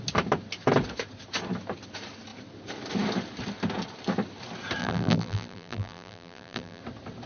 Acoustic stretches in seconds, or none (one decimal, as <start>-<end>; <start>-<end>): 0.0-4.8; 6.8-7.3